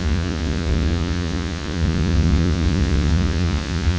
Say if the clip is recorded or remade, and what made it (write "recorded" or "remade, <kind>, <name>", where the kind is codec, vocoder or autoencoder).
remade, vocoder, Vocos